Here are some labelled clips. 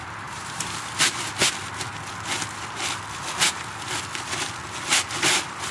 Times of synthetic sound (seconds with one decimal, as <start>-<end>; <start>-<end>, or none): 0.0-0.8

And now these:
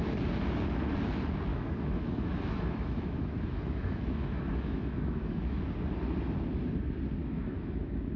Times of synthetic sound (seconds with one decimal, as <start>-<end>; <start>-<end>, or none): 1.5-5.6; 7.2-8.2

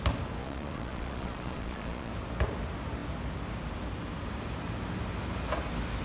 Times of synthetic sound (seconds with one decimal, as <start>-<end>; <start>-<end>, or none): 0.4-2.1

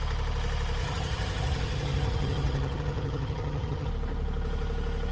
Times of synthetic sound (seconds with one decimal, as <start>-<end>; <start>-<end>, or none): 0.8-3.9

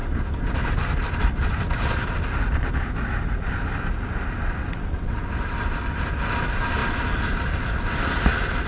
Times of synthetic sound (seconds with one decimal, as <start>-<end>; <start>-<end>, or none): 4.6-5.2

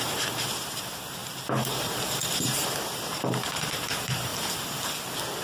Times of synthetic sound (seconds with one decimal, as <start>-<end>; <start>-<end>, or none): 0.0-1.2; 1.8-2.2; 3.1-4.3

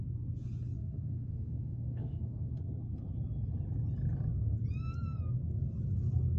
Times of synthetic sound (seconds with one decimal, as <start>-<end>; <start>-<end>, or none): 0.8-2.5

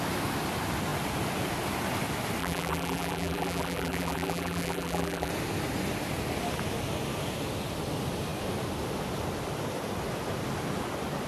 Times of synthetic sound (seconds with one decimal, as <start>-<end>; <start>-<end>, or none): 2.4-5.3